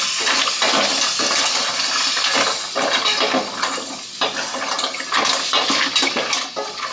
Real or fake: real